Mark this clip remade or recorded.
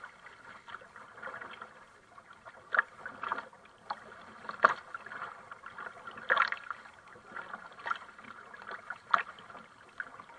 recorded